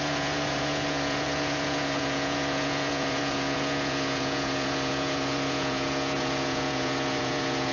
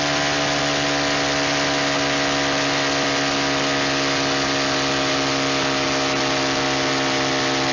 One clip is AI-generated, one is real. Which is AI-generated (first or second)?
first